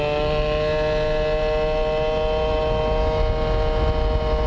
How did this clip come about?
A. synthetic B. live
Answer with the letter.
B